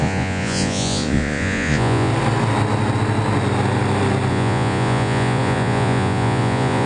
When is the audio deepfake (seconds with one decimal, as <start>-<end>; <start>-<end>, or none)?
0.0-2.1; 4.3-6.9